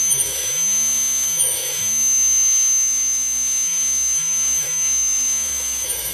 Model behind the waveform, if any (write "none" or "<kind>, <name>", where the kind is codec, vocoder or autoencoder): autoencoder, DAC-VAE